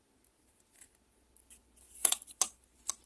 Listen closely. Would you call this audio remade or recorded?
recorded